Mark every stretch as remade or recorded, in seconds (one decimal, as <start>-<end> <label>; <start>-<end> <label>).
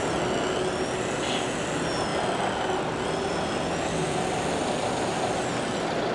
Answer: 0.0-6.1 recorded